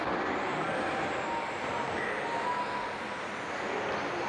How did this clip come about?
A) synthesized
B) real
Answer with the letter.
B